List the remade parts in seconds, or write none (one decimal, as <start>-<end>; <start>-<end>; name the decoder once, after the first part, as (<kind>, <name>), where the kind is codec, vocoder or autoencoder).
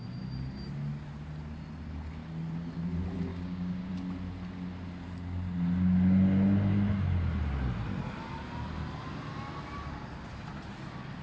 3.3-3.9 (codec, DAC)